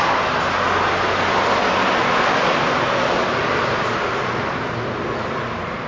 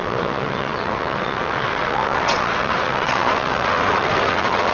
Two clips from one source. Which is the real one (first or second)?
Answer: first